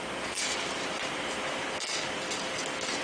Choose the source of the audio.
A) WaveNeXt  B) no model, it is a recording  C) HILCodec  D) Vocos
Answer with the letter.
B